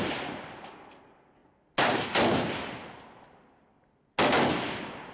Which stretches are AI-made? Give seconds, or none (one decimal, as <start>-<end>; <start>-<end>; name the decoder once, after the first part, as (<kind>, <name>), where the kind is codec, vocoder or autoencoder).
none